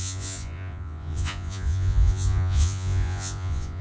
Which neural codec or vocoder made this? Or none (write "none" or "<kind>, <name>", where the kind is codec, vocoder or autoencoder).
vocoder, Vocos